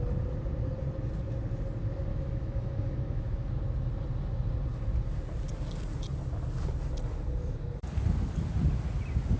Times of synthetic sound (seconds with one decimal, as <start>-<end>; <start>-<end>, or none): 2.1-3.5